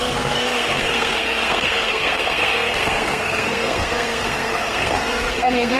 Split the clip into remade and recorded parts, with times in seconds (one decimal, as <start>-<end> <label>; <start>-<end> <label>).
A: 0.0-5.8 remade